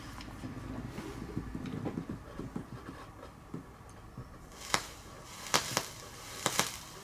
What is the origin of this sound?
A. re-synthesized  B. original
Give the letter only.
A